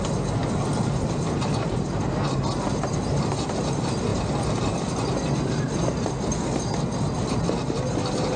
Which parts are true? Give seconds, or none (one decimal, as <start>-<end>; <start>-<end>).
0.0-8.4